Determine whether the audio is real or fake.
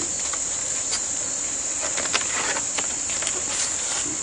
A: real